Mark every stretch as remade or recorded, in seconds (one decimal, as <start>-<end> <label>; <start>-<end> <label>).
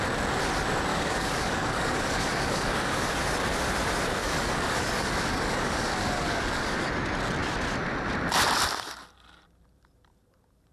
0.0-0.9 recorded; 0.9-3.2 remade; 3.2-4.2 recorded; 4.2-6.9 remade; 6.9-10.7 recorded